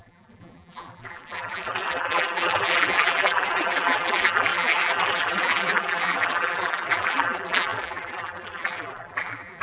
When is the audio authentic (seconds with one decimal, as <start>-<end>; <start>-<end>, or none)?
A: none